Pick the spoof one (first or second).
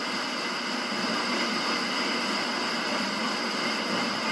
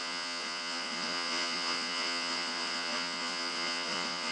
second